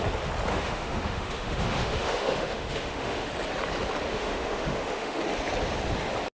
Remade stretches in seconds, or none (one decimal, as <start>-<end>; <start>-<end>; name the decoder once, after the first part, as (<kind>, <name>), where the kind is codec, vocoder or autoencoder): 0.5-3.3 (autoencoder, DAC-VAE); 4.1-5.2